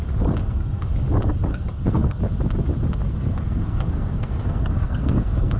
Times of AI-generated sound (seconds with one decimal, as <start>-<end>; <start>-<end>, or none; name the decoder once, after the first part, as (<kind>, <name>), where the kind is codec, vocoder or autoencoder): 0.4-0.9 (codec, SNAC); 1.5-2.2; 3.1-5.6